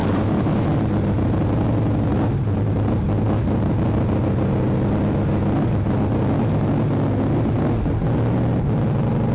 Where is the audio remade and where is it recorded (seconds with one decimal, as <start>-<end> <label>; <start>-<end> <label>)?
0.0-9.3 recorded